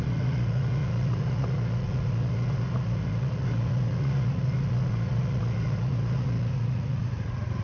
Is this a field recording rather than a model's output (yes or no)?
no